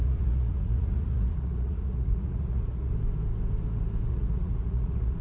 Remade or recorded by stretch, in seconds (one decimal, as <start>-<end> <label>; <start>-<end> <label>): 0.0-2.9 remade; 2.9-4.1 recorded; 4.1-5.2 remade